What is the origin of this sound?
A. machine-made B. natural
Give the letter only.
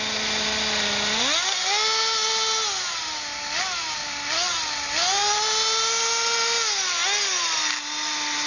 B